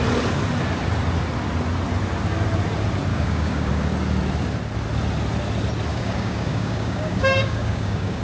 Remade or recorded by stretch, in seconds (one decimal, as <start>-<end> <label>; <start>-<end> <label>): 0.0-3.1 recorded; 3.1-3.7 remade; 3.7-5.9 recorded; 5.9-8.2 remade